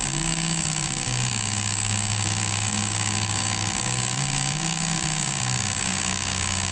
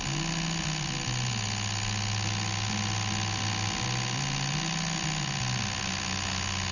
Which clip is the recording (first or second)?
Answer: second